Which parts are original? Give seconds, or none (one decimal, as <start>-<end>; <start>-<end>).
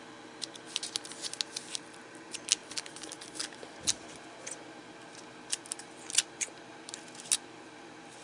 0.0-8.2